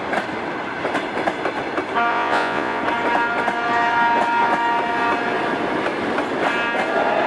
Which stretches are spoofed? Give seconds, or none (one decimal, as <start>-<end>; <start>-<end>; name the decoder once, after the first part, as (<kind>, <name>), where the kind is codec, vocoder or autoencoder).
2.1-2.8 (vocoder, Vocos)